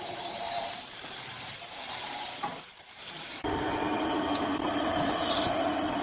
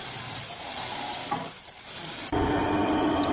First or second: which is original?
second